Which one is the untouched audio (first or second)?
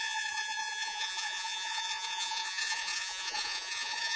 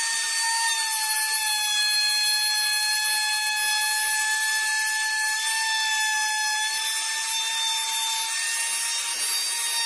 second